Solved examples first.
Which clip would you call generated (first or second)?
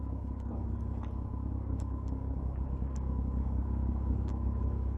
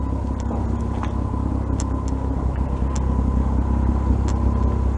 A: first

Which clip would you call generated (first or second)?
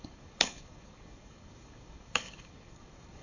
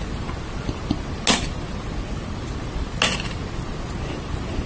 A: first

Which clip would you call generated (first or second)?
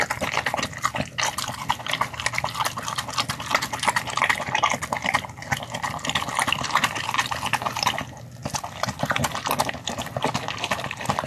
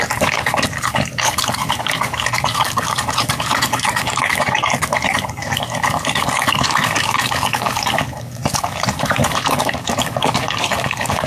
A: second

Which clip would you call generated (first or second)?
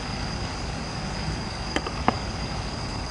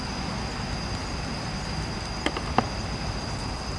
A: first